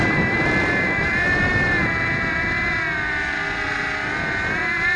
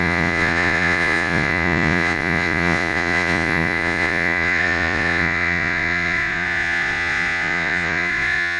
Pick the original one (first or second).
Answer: first